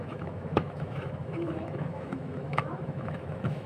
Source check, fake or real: fake